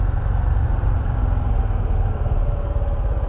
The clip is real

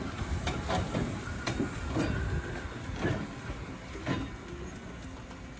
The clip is real